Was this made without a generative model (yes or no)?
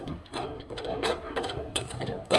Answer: no